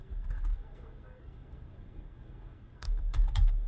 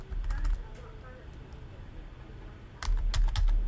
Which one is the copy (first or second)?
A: first